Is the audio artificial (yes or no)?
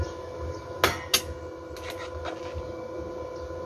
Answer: no